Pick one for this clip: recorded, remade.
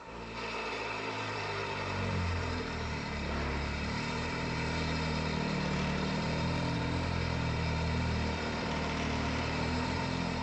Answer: remade